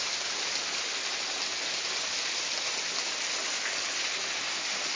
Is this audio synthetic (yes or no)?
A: no